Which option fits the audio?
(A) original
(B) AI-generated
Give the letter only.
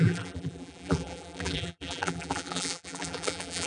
B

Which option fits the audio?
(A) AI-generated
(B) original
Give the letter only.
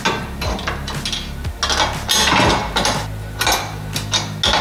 B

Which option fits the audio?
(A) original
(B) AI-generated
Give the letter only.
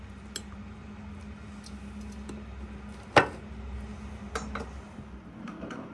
A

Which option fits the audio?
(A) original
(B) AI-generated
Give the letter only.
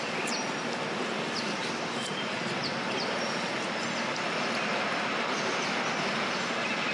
A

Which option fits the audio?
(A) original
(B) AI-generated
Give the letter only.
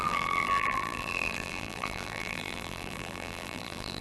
B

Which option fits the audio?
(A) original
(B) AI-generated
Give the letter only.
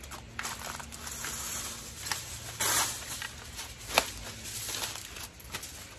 A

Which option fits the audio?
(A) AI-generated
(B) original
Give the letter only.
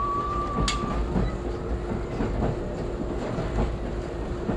B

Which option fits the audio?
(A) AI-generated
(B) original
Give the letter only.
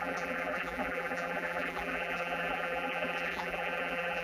A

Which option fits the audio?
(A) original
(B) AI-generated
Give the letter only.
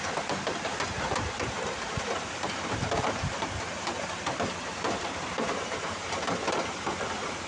B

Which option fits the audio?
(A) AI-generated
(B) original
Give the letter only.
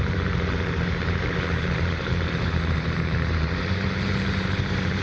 A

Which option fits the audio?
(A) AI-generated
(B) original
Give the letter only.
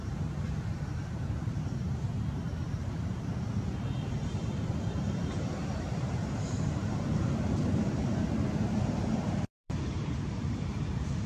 A